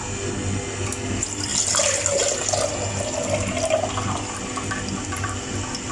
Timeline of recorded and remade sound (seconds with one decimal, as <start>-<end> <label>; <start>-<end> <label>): 0.0-5.9 recorded